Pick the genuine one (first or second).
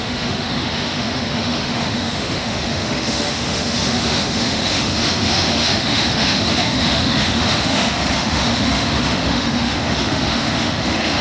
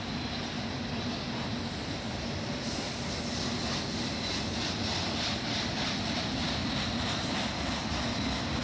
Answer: second